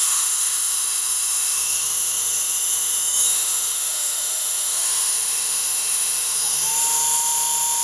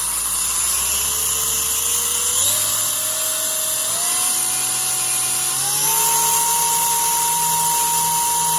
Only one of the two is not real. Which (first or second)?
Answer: first